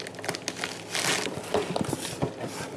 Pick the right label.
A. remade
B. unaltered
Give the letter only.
B